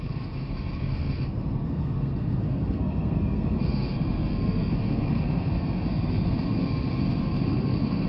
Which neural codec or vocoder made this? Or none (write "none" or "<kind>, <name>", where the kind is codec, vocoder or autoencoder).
codec, SNAC